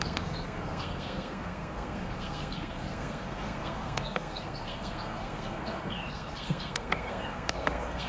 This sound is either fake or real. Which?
fake